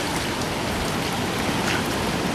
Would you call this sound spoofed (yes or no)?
no